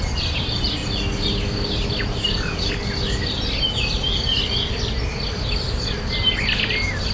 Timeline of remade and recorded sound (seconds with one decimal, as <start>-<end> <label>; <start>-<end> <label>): 0.0-7.1 recorded